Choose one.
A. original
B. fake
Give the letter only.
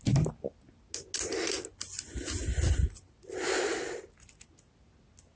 A